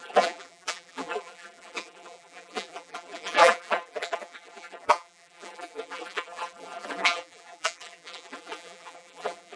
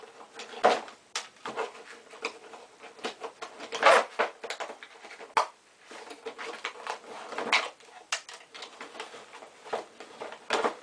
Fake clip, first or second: first